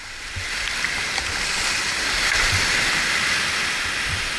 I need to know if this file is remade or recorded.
recorded